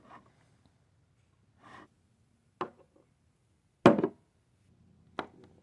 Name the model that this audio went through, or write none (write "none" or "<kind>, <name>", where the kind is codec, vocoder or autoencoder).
none